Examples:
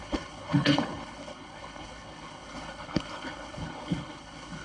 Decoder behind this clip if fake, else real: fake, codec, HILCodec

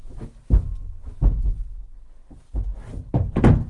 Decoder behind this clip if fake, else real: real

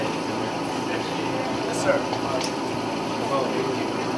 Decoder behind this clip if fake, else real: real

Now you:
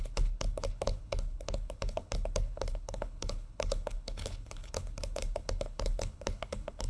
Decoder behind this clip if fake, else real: fake, codec, HILCodec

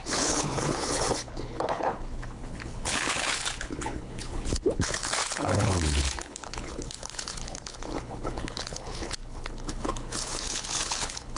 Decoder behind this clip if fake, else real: fake, codec, HILCodec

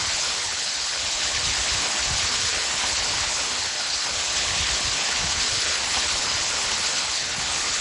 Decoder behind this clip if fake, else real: fake, codec, HILCodec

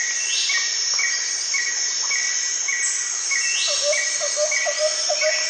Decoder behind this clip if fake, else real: real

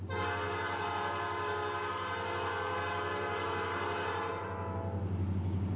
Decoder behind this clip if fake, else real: real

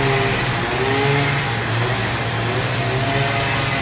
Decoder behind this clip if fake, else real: real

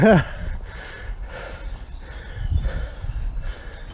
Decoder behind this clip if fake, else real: real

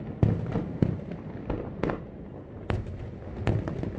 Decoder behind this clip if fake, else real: real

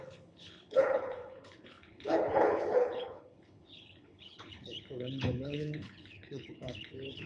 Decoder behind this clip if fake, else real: fake, codec, HILCodec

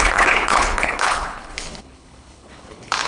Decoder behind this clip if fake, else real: fake, codec, HILCodec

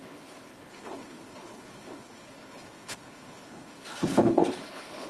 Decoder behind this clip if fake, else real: fake, codec, HILCodec